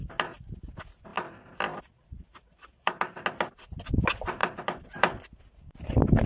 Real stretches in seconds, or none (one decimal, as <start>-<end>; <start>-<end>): 0.0-6.3